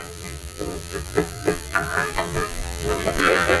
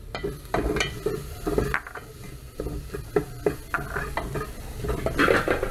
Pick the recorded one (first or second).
second